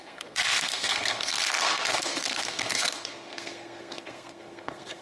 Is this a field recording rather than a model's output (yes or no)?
no